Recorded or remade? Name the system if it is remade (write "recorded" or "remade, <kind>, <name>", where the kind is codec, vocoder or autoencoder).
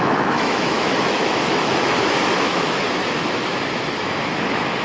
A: remade, autoencoder, DAC-VAE